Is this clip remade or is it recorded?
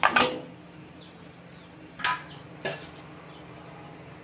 recorded